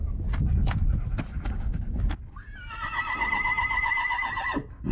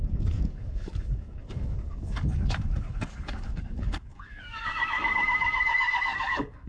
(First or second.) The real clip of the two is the first